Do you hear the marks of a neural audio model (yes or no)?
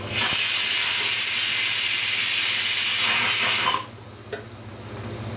no